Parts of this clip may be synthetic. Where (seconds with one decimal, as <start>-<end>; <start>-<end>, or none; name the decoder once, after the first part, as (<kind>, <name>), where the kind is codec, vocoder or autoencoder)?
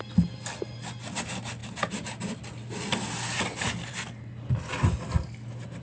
none